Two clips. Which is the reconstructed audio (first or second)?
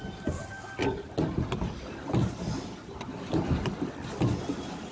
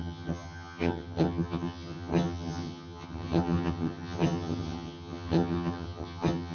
second